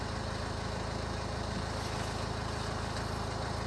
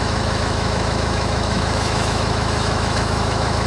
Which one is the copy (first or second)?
second